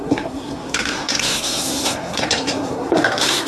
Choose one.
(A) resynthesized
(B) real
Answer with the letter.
A